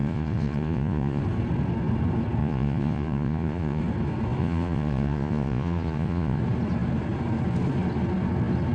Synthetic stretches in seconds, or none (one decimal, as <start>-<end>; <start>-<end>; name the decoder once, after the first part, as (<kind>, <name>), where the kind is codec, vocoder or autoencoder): 0.0-1.2 (vocoder, Vocos); 2.4-3.8; 4.4-6.4